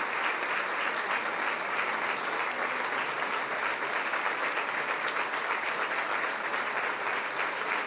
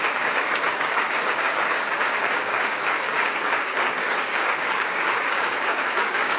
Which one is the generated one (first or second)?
second